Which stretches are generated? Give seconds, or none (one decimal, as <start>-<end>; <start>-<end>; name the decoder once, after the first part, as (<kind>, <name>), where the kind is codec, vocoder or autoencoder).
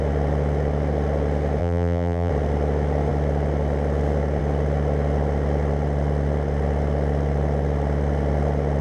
1.6-2.3 (vocoder, BigVGAN v2)